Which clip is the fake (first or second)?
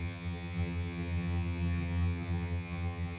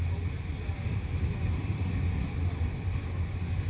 first